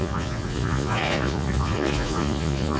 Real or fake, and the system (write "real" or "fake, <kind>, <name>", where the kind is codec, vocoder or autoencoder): fake, vocoder, Vocos